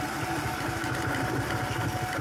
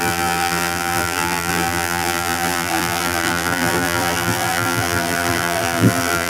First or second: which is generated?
second